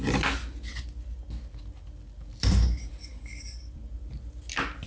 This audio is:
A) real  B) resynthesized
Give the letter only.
A